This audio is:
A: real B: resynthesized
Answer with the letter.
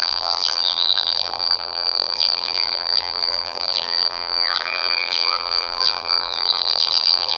B